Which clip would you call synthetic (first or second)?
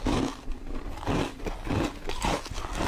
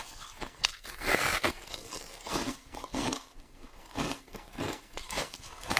second